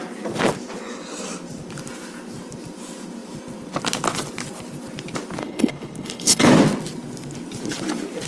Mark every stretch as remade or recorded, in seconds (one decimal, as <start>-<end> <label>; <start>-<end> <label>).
0.0-5.4 recorded; 5.4-6.5 remade; 6.5-8.3 recorded